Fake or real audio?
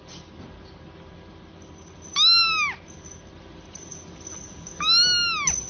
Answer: real